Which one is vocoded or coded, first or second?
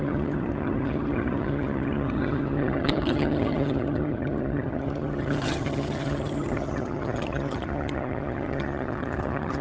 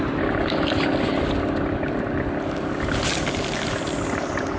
first